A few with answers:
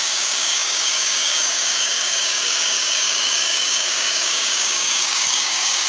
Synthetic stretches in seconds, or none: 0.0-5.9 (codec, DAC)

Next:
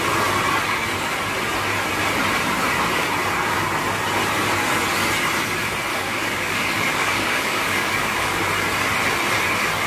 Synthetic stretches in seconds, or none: 5.9-8.4 (codec, DAC)

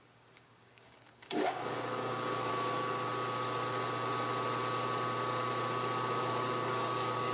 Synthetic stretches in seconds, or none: 0.0-2.5 (codec, DAC); 6.2-7.3

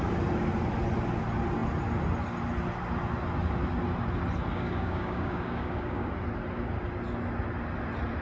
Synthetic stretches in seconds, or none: 4.5-6.1 (codec, DAC)

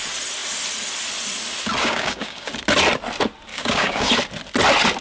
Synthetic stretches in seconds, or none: 1.8-2.5 (codec, DAC); 3.5-4.1

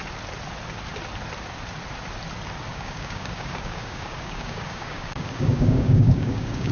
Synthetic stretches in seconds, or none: 2.7-6.7 (codec, DAC)

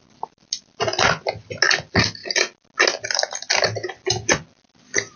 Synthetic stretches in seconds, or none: none

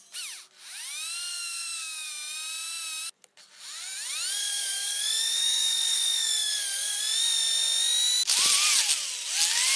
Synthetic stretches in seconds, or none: 1.3-2.1 (codec, DAC); 4.4-7.0